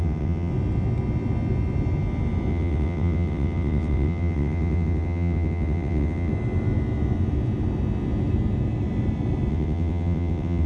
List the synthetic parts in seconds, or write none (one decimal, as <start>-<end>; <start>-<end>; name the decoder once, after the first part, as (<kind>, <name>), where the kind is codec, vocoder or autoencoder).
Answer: 0.0-0.5 (vocoder, WaveNeXt); 2.5-6.3; 9.5-10.7

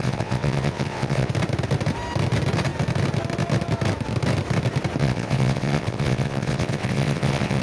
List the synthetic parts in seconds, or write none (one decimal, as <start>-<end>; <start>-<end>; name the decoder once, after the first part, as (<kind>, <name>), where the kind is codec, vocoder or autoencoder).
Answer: 0.0-1.3 (vocoder, WaveNeXt); 5.0-7.6